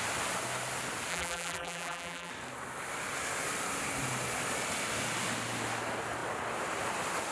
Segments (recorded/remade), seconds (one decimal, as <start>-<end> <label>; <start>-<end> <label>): 0.0-1.1 recorded; 1.1-2.3 remade; 2.3-7.3 recorded